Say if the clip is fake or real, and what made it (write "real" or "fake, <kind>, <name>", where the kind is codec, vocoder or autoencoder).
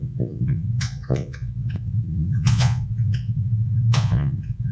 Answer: fake, vocoder, Vocos